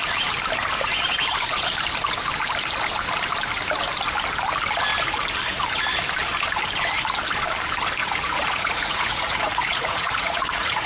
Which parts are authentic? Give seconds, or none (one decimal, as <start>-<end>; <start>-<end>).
0.0-8.0